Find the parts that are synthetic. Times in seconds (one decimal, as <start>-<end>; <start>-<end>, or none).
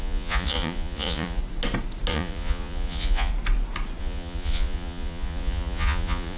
0.0-1.4; 2.1-3.3; 4.0-6.4